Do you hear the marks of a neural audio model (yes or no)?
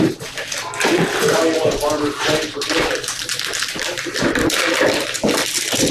yes